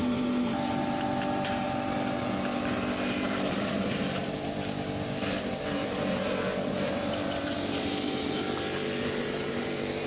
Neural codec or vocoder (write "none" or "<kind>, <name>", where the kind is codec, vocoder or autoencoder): vocoder, BigVGAN v2